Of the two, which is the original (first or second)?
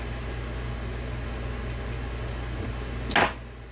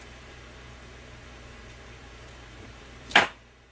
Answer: first